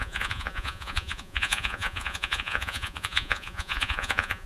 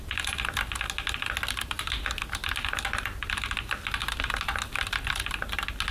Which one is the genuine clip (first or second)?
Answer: second